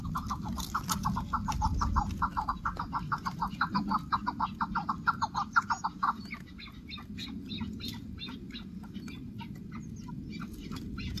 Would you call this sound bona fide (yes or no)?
yes